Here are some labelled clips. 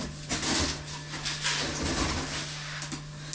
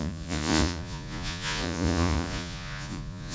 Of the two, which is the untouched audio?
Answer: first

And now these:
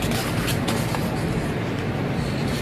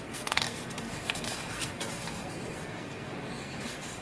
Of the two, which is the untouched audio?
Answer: first